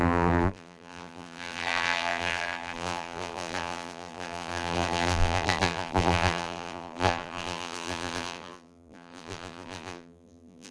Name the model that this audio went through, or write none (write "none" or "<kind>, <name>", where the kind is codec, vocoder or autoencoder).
vocoder, BigVGAN v2